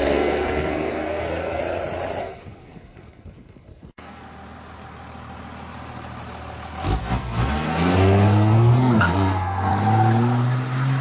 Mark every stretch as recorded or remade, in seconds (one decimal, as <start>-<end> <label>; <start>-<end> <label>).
0.0-1.6 remade; 1.6-2.2 recorded; 2.2-4.2 remade; 4.2-7.0 recorded; 7.0-9.7 remade; 9.7-11.0 recorded